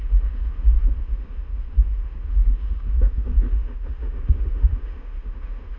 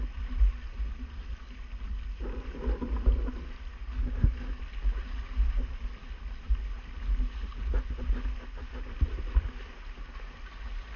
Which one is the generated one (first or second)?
first